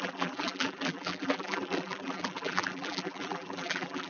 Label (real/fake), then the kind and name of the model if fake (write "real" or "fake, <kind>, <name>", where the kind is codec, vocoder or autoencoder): fake, vocoder, BigVGAN v2